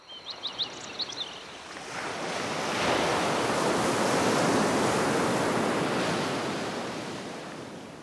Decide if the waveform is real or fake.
real